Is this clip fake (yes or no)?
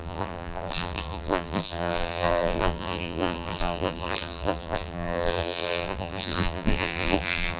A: yes